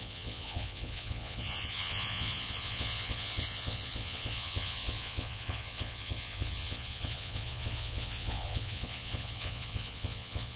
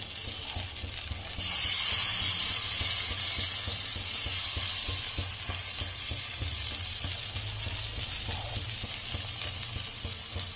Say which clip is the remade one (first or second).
first